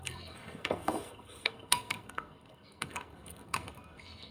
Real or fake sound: fake